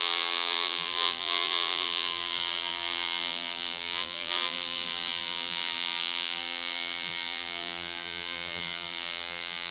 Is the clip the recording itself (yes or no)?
no